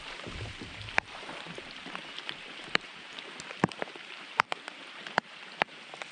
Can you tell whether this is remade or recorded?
remade